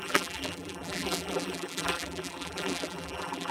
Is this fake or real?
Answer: fake